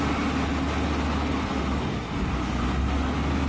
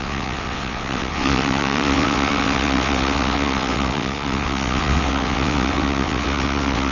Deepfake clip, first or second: second